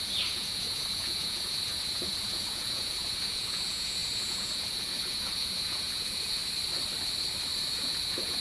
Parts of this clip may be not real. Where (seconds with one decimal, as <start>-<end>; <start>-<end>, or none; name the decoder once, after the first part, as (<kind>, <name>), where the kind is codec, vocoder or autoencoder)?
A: 0.0-6.4 (vocoder, Vocos); 7.7-8.4